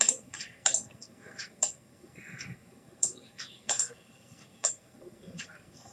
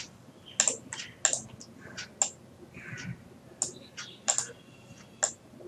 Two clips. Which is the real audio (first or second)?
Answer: second